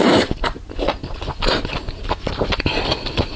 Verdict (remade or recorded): recorded